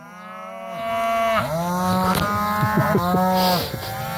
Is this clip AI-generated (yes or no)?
no